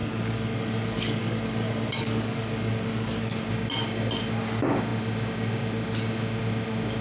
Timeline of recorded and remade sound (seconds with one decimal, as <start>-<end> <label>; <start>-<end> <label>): 0.0-3.5 remade; 3.5-7.0 recorded